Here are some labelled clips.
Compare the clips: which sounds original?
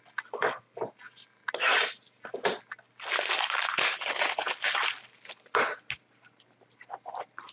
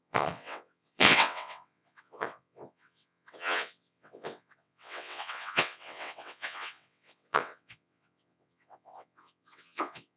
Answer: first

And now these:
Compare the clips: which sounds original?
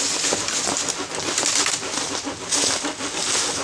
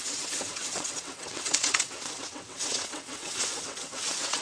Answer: first